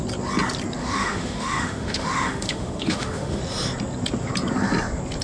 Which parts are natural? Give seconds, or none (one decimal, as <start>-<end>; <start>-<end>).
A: 0.0-0.8; 3.4-5.2